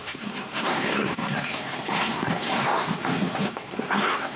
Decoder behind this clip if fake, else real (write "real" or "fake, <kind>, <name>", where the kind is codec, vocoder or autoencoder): fake, codec, SNAC